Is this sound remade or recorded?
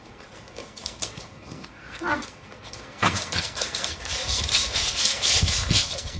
remade